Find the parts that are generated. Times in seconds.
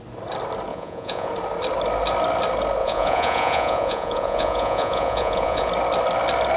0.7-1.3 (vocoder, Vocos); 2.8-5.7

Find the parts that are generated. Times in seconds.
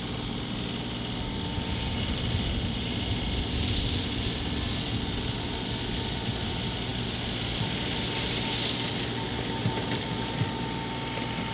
none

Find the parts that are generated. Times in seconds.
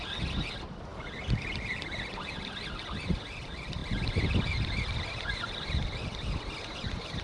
none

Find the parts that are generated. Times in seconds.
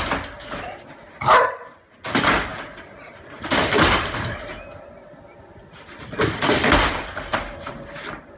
none